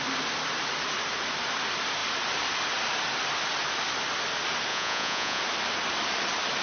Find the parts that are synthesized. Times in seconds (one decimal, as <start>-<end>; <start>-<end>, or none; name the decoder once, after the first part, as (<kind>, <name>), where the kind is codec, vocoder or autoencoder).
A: 4.7-5.4 (vocoder, Vocos)